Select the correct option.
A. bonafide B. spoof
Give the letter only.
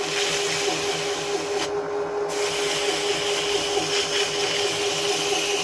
A